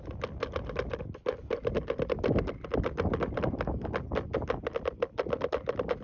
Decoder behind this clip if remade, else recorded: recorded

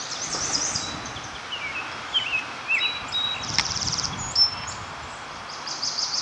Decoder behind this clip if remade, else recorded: recorded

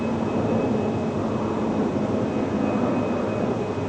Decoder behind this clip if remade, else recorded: recorded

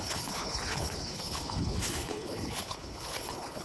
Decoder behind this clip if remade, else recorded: remade, codec, HILCodec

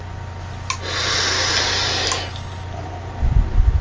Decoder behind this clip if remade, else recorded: recorded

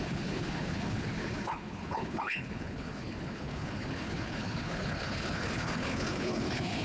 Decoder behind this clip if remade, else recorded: remade, codec, HILCodec